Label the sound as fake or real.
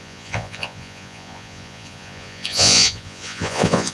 fake